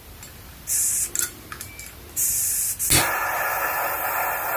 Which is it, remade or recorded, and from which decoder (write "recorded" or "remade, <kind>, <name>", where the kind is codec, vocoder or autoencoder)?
recorded